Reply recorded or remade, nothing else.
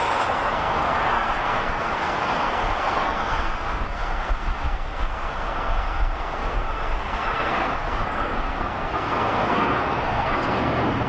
remade